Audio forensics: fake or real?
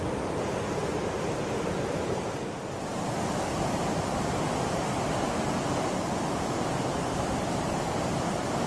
real